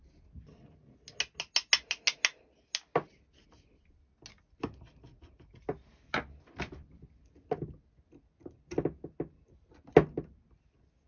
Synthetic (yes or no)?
no